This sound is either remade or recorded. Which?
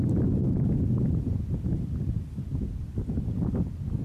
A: recorded